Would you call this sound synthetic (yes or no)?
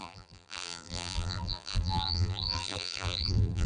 yes